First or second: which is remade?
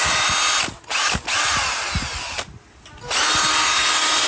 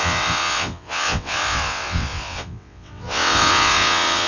second